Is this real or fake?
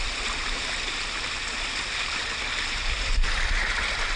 real